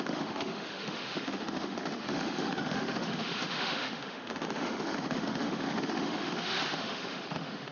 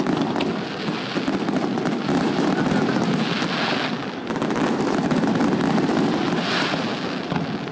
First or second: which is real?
second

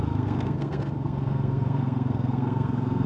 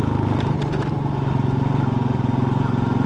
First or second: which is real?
second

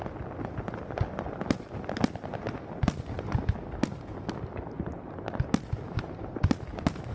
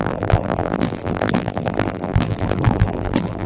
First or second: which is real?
first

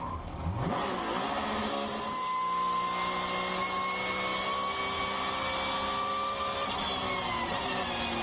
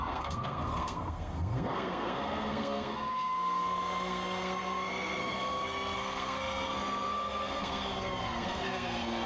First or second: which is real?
first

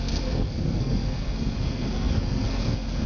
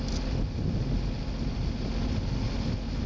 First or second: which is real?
second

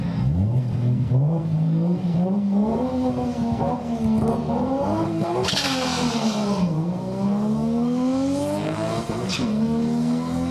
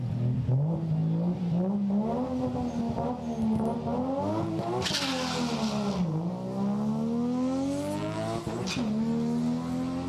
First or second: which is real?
second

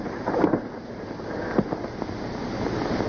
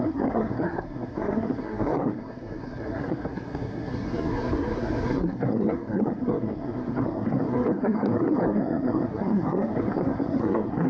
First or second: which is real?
first